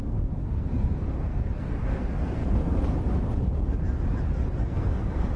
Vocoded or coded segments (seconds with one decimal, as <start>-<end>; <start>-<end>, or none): 0.0-2.4; 4.6-5.4